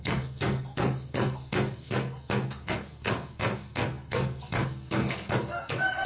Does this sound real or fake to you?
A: fake